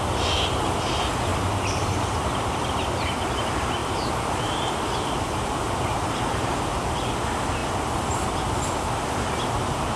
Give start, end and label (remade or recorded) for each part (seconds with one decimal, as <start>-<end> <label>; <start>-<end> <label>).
0.0-1.3 recorded; 1.3-1.9 remade; 1.9-3.8 recorded; 3.8-6.6 remade; 6.6-10.0 recorded